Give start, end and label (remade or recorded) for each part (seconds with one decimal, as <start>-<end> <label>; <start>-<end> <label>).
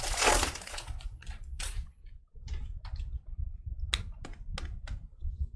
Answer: 0.0-2.0 remade; 2.0-5.6 recorded